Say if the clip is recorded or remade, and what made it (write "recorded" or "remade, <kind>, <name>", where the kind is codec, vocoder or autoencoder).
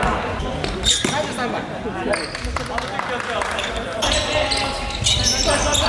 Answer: recorded